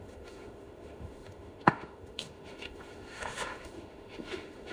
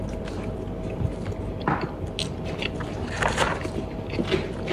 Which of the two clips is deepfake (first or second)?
first